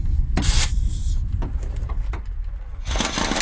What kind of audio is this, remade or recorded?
recorded